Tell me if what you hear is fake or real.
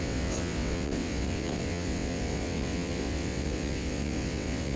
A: fake